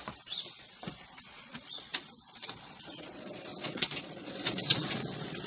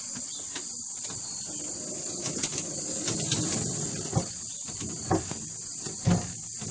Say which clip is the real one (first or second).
second